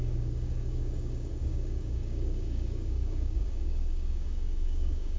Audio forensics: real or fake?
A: fake